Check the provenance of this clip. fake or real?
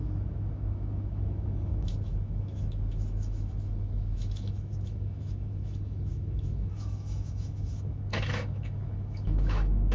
fake